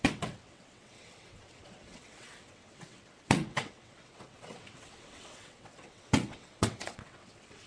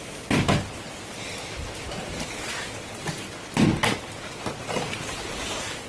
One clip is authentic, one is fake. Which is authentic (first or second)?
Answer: second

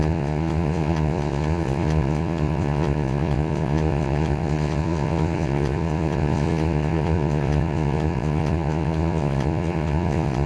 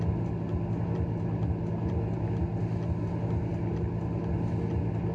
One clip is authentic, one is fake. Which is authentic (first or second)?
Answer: second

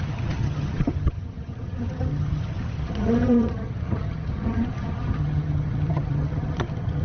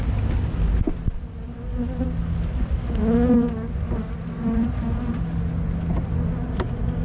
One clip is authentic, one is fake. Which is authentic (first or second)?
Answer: second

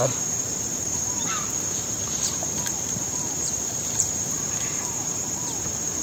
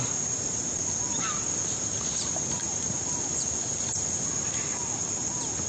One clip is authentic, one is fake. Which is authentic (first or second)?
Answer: second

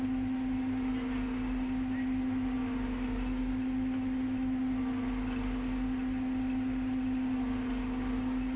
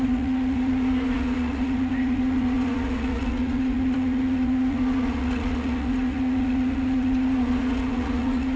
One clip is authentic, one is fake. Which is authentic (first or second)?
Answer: first